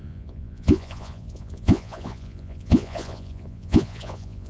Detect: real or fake fake